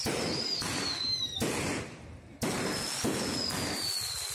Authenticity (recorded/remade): recorded